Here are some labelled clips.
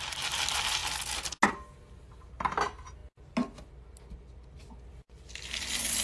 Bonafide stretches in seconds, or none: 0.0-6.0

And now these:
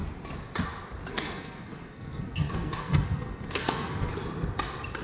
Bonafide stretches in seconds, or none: 0.0-1.1; 4.1-5.0

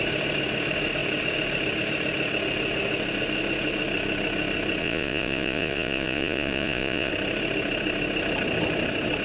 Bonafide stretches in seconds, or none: 0.0-4.8; 7.1-9.2

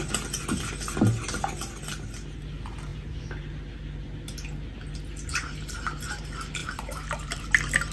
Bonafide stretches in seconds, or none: 0.0-6.6; 7.4-7.9